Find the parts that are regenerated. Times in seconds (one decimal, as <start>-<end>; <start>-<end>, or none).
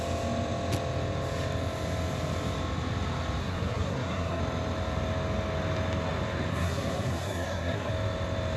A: 3.4-4.4; 6.5-7.9